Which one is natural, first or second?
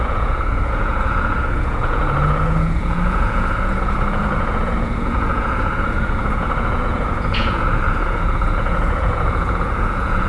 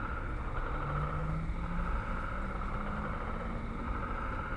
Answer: second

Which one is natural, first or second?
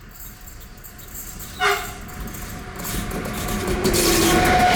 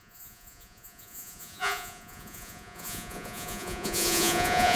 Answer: first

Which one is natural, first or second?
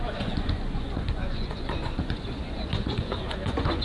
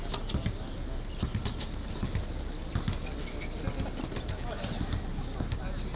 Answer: second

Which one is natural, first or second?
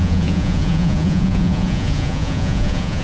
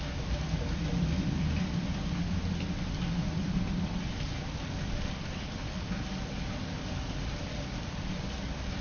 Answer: second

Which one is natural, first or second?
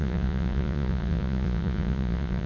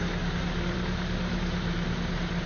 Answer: second